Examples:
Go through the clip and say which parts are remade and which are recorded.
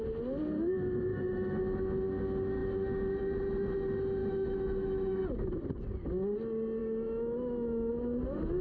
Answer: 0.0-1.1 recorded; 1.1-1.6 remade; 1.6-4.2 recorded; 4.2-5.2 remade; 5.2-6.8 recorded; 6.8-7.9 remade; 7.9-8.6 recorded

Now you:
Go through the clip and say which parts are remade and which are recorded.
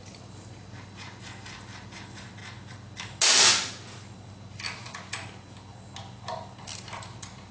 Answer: 0.0-7.5 recorded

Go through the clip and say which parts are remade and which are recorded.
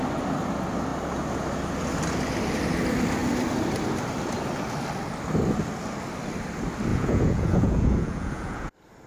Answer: 0.0-6.9 recorded; 6.9-8.7 remade; 8.7-9.1 recorded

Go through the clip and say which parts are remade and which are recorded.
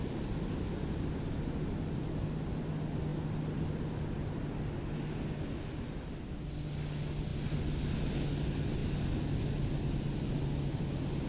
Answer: 0.0-11.3 recorded